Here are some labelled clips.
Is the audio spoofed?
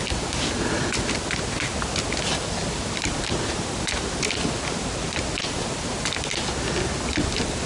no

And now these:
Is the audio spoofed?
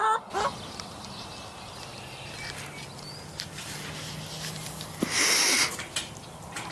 no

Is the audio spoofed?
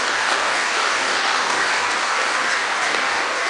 yes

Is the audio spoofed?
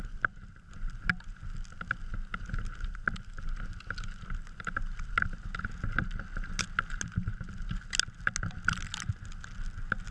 no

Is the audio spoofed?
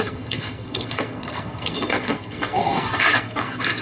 yes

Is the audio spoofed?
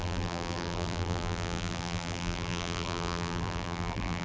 yes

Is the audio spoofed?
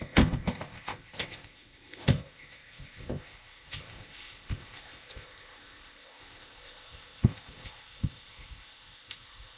yes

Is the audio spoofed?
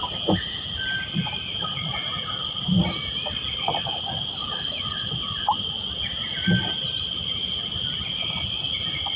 no